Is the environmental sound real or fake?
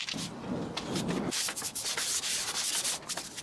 real